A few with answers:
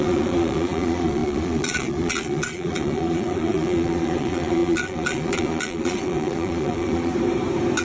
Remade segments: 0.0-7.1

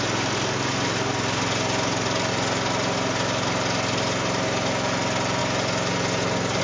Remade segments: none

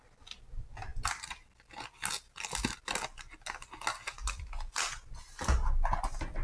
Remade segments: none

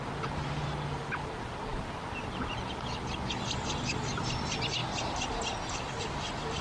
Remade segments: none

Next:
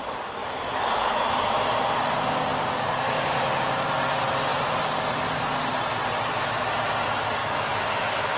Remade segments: 0.4-1.6; 7.4-8.4

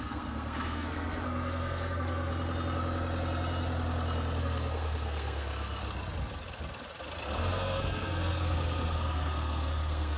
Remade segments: 0.0-2.3; 4.4-5.8; 7.2-10.2

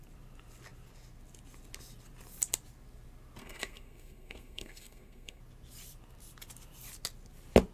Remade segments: 3.4-5.4

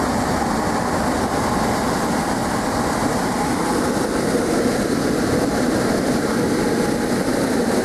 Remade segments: none